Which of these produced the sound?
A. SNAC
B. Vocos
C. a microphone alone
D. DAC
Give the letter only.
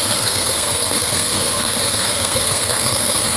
A